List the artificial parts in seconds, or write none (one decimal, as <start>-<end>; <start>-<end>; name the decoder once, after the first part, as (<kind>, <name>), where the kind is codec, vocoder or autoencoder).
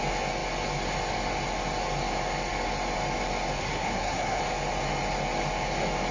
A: 3.6-4.4 (codec, SNAC)